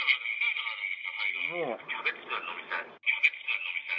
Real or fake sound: real